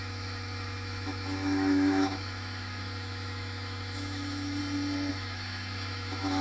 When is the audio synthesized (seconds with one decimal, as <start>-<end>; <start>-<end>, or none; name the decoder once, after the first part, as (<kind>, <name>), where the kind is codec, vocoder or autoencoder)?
0.0-4.6 (autoencoder, DAC-VAE); 5.1-6.4